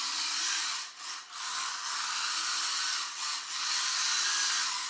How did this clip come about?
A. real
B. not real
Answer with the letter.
A